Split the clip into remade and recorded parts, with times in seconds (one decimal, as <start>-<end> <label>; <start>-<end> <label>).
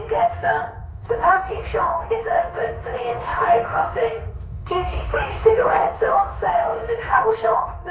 0.0-7.9 remade